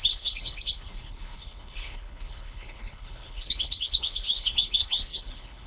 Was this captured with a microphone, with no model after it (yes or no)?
no